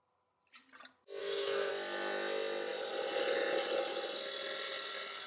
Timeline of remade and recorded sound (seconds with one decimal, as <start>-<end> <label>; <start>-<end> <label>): 0.0-1.2 recorded; 1.2-1.7 remade; 1.7-5.3 recorded